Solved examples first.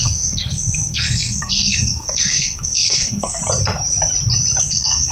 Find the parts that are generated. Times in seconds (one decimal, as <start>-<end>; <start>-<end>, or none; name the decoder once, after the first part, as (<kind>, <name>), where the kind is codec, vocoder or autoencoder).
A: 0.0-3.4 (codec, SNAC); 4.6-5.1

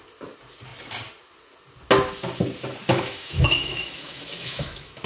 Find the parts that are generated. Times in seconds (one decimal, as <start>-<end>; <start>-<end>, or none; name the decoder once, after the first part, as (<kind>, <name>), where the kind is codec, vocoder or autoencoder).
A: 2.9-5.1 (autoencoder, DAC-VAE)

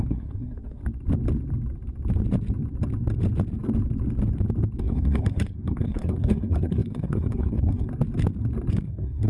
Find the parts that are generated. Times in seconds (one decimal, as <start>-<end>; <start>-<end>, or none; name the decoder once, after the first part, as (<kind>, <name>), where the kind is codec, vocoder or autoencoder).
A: 0.0-0.8 (codec, SNAC); 4.8-7.9; 8.7-9.3